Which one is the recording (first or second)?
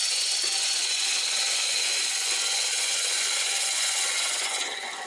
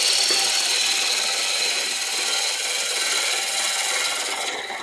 second